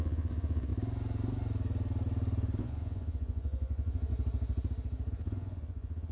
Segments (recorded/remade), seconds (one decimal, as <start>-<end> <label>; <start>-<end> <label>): 0.0-0.7 remade; 0.7-2.6 recorded; 2.6-4.1 remade; 4.1-5.1 recorded; 5.1-6.1 remade

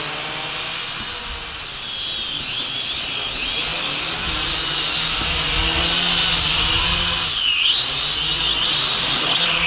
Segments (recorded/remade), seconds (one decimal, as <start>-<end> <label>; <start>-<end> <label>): 0.0-9.7 recorded

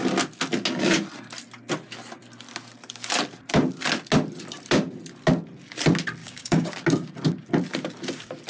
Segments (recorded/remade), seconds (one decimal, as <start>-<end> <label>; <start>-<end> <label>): 0.0-6.2 recorded; 6.2-6.7 remade; 6.7-8.5 recorded

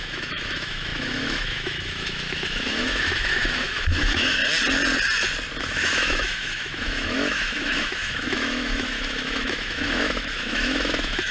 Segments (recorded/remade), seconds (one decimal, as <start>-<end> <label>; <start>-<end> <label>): 0.0-4.4 remade; 4.4-5.6 recorded; 5.6-11.3 remade

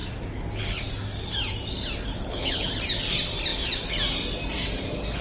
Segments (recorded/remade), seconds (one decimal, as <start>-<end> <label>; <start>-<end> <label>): 0.0-2.1 recorded; 2.1-2.7 remade; 2.7-5.2 recorded